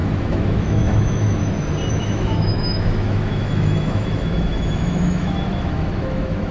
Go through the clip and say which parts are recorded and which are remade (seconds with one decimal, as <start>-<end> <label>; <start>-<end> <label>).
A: 0.0-1.4 remade; 1.4-1.9 recorded; 1.9-6.5 remade